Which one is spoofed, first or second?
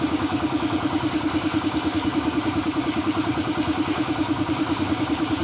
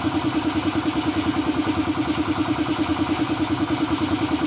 first